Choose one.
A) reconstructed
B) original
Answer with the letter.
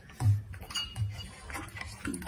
B